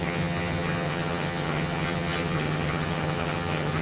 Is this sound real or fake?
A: fake